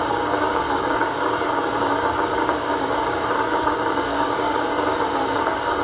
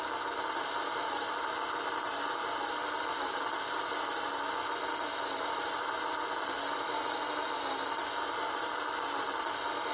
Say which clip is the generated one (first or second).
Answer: first